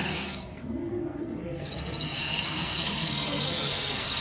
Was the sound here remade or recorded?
remade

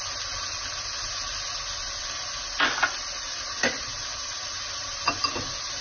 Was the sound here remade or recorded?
recorded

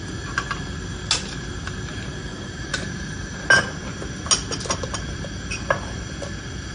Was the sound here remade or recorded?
recorded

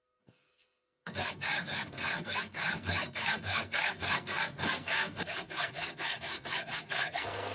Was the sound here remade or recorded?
remade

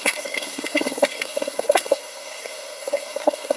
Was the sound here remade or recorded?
remade